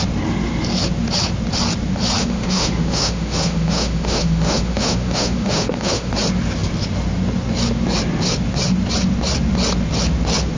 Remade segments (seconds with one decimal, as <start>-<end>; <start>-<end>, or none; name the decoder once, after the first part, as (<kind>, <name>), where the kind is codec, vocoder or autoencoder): 2.2-6.1 (autoencoder, DAC-VAE)